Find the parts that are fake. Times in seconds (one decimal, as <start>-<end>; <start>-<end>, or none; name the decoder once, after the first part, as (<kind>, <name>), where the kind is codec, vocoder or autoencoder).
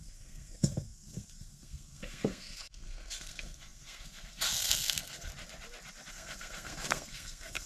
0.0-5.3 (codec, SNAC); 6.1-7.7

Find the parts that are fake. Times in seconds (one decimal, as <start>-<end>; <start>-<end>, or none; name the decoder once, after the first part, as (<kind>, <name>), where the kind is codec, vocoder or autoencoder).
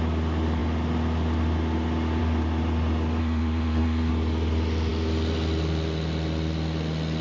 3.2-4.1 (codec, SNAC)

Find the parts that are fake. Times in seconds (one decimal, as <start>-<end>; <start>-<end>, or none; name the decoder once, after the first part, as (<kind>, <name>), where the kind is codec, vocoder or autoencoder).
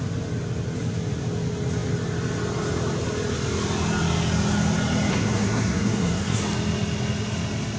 5.1-6.4 (codec, SNAC)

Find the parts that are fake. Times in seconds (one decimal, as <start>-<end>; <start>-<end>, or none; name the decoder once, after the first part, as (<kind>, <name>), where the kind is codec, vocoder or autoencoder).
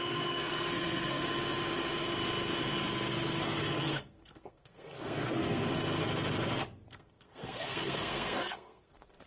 0.0-1.2 (codec, SNAC); 3.4-5.7; 6.9-9.3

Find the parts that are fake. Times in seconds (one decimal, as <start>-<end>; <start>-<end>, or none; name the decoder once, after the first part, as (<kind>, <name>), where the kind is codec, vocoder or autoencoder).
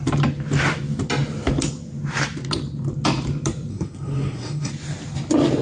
3.7-4.7 (codec, SNAC)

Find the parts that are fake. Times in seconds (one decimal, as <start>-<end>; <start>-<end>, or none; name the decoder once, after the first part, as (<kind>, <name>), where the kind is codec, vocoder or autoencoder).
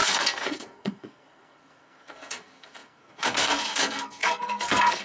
0.0-5.0 (codec, SNAC)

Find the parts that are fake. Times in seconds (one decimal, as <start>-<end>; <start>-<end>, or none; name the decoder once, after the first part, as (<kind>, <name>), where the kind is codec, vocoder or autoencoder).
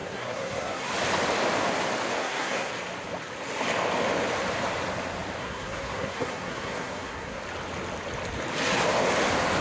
0.0-0.9 (codec, SNAC); 2.2-2.7; 5.4-7.4